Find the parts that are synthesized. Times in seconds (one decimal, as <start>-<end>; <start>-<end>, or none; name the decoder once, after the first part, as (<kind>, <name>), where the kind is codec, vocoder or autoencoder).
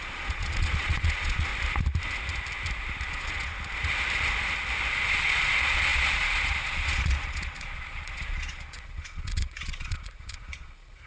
0.0-1.5 (vocoder, Vocos); 3.1-3.5; 5.0-11.1